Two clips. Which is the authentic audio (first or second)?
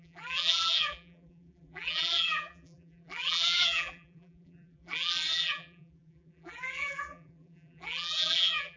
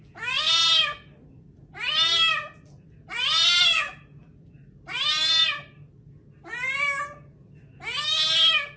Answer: second